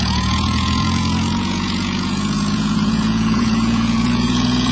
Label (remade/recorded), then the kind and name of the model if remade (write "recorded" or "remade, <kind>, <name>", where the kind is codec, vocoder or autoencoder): remade, vocoder, Vocos